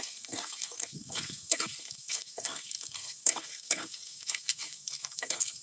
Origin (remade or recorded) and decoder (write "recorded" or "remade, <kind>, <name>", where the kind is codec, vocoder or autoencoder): remade, codec, SNAC